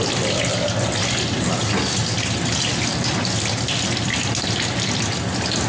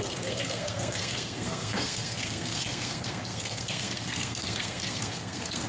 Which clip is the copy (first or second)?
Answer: second